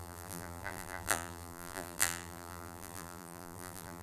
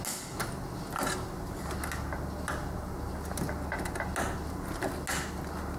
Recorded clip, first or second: second